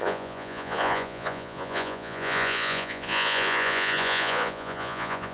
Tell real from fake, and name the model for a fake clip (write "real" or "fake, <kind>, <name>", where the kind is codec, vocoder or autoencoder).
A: fake, vocoder, Vocos